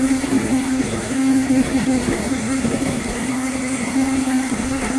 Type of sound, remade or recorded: remade